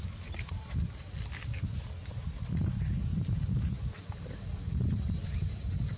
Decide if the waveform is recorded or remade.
recorded